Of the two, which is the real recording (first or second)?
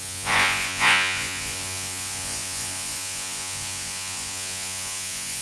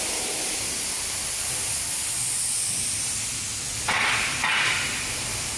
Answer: second